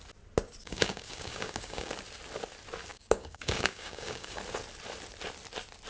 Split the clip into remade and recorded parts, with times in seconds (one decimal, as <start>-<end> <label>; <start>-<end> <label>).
0.0-0.6 recorded; 0.6-1.9 remade; 1.9-2.9 recorded; 2.9-4.4 remade; 4.4-5.9 recorded